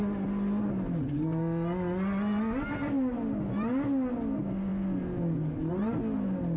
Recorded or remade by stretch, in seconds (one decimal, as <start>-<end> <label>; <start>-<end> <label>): 0.0-6.6 recorded